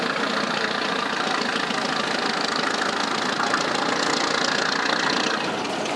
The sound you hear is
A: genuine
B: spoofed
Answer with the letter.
A